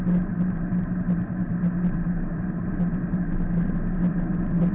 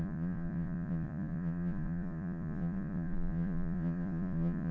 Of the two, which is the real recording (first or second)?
first